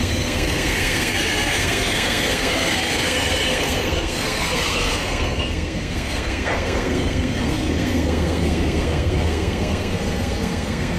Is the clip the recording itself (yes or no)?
no